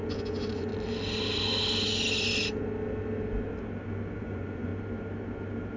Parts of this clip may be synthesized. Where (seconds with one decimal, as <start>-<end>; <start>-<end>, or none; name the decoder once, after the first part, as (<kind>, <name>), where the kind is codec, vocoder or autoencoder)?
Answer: 0.0-0.7 (vocoder, Vocos); 4.2-4.7